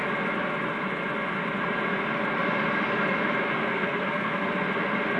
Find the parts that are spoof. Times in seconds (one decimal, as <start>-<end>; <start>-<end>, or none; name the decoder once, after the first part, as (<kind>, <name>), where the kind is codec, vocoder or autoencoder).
3.6-4.5 (codec, SNAC)